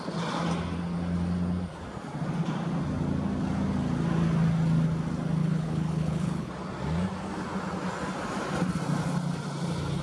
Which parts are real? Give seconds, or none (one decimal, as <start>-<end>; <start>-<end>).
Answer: 0.0-5.4; 6.5-10.0

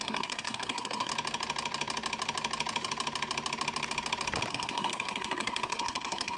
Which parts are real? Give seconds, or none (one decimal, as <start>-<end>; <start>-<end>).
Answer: 1.1-4.5

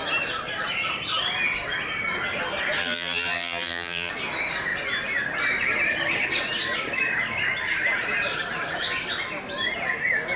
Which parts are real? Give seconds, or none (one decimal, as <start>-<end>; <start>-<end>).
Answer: 0.0-2.8; 4.1-10.4

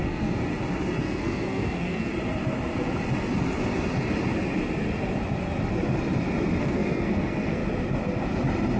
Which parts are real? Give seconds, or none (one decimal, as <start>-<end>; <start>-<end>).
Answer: 0.5-1.0; 2.1-6.6; 7.6-8.8

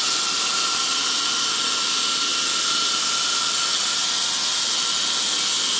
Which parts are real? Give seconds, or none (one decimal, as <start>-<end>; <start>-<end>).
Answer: 0.0-5.8

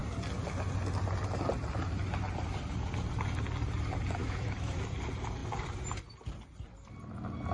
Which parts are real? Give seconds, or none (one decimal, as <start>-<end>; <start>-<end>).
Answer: 0.0-4.2; 4.8-7.5